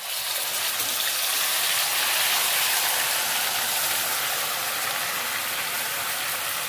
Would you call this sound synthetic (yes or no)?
no